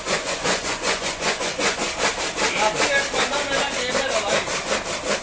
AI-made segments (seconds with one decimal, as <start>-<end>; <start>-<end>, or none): 0.0-1.8